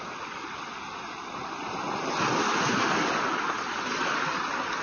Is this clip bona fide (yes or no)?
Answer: yes